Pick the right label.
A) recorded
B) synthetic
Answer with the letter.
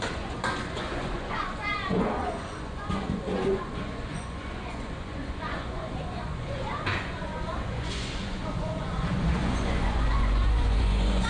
B